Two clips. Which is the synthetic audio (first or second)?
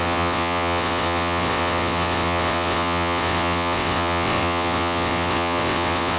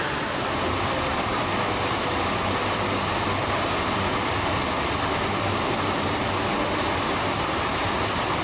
first